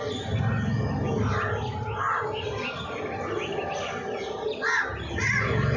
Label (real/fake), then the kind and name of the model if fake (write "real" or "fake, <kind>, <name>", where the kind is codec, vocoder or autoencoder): real